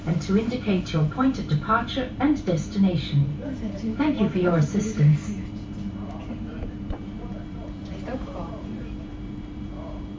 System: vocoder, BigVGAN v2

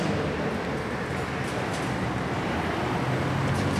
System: none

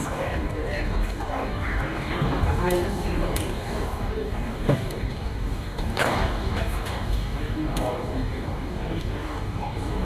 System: codec, DAC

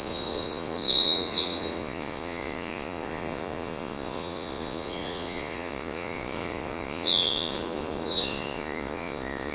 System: vocoder, Vocos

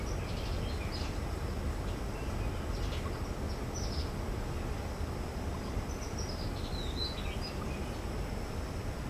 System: none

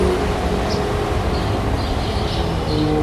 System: none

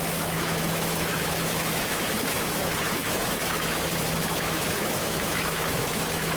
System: autoencoder, DAC-VAE